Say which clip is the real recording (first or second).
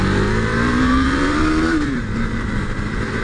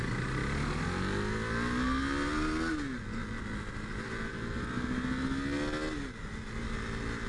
second